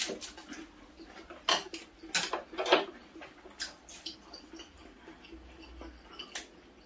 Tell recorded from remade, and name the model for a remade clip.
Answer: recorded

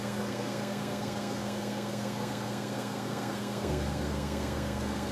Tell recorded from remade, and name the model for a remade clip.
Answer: remade, codec, SNAC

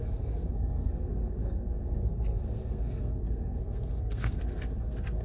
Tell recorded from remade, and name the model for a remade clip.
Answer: remade, codec, SNAC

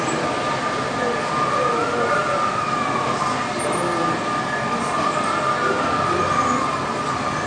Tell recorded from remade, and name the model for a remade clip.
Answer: recorded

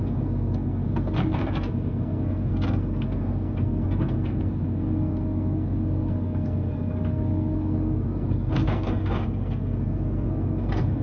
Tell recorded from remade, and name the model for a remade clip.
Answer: remade, codec, SNAC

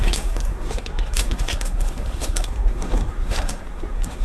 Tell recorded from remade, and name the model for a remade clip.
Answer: remade, codec, SNAC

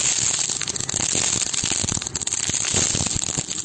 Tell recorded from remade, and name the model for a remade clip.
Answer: recorded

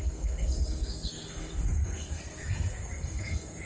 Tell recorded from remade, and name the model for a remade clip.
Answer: remade, codec, SNAC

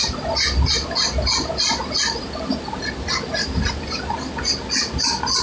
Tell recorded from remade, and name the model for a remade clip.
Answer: recorded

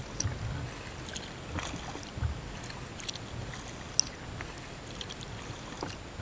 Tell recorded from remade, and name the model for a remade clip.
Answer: recorded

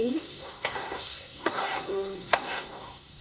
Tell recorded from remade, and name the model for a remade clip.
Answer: remade, codec, SNAC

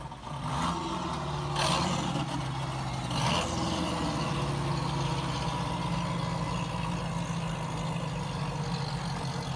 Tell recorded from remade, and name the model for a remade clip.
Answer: recorded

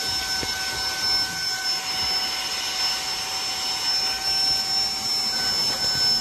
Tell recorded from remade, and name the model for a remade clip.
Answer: recorded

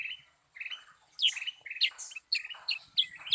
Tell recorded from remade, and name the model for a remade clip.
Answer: recorded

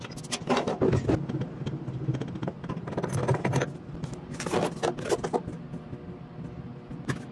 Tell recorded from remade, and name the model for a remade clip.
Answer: recorded